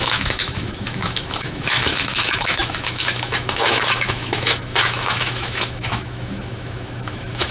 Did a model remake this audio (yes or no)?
yes